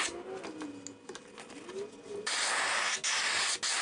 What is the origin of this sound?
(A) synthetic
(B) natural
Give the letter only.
B